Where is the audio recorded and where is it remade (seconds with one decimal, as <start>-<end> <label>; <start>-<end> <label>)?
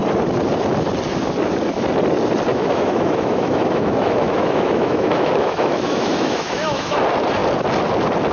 0.0-2.5 recorded; 2.5-7.0 remade; 7.0-8.3 recorded